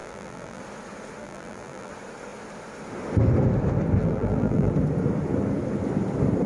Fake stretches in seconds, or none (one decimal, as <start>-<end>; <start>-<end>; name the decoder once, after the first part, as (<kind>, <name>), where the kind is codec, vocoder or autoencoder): 0.0-0.6 (vocoder, BigVGAN v2); 1.2-1.9; 4.0-4.7